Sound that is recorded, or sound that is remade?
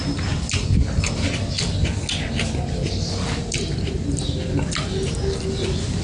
recorded